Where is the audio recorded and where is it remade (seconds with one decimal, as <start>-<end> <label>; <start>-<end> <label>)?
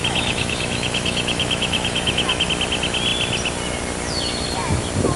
0.0-2.5 remade; 2.5-5.2 recorded